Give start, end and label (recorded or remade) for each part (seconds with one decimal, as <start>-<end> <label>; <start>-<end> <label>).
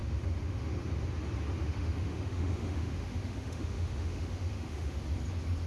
0.0-0.8 remade; 0.8-1.6 recorded; 1.6-5.0 remade; 5.0-5.7 recorded